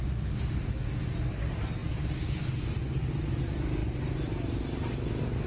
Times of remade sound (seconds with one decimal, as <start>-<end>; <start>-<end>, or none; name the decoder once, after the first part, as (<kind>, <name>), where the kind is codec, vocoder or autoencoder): none